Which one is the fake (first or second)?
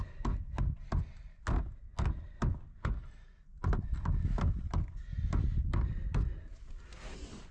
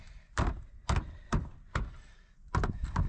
second